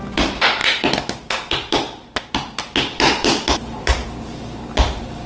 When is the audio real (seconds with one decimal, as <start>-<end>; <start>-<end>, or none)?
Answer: 0.0-5.3